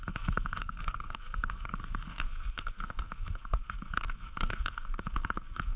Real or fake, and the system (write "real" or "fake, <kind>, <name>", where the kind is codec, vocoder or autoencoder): fake, codec, SNAC